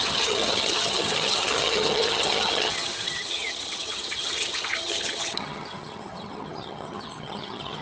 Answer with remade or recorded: remade